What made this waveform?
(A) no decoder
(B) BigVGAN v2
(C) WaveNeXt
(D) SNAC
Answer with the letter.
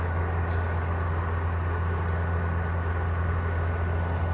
A